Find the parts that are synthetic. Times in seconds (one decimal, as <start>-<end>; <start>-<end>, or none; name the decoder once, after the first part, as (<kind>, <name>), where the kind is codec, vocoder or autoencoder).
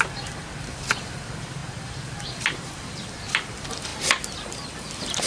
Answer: 0.0-3.9 (vocoder, BigVGAN v2); 4.5-5.3